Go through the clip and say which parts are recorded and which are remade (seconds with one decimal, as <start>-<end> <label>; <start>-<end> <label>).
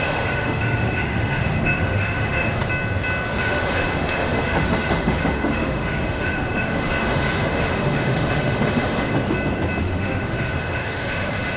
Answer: 0.0-2.6 remade; 2.6-3.4 recorded; 3.4-9.1 remade; 9.1-9.8 recorded; 9.8-11.6 remade